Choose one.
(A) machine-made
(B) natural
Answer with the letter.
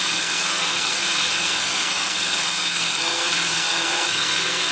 A